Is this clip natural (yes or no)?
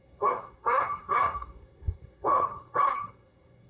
no